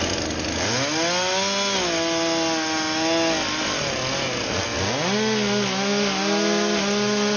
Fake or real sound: real